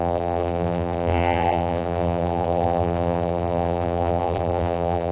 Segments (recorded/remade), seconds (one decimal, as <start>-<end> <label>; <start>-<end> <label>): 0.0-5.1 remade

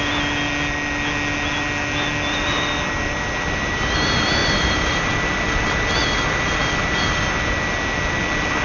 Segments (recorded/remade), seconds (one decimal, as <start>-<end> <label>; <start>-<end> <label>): 0.0-4.4 recorded; 4.4-5.1 remade; 5.1-8.6 recorded

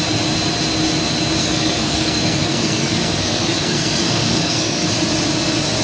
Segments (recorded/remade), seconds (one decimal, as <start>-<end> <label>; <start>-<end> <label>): 0.0-1.4 recorded; 1.4-4.9 remade; 4.9-5.8 recorded

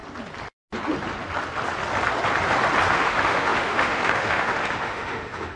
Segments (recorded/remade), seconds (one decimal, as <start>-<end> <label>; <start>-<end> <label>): 0.0-2.9 recorded; 2.9-5.6 remade